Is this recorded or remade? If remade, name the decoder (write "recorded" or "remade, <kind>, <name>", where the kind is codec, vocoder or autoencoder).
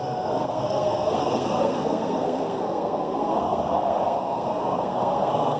remade, codec, SNAC